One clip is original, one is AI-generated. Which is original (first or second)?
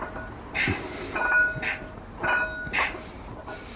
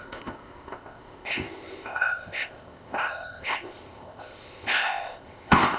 first